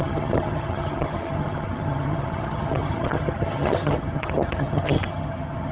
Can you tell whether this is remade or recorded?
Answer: remade